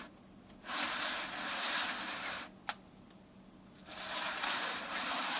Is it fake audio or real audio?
real